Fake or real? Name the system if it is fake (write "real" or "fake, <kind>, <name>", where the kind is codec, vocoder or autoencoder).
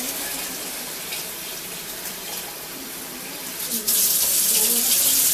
fake, vocoder, BigVGAN v2